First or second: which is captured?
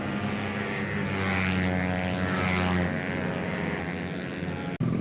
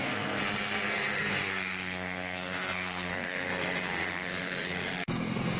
first